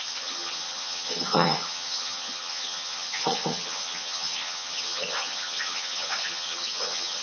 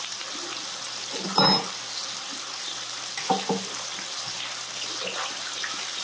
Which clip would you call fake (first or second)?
first